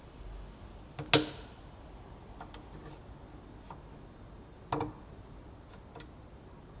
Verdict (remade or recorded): recorded